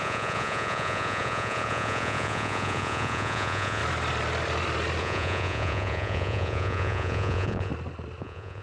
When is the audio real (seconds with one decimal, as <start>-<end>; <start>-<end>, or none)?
3.8-5.0; 7.7-8.2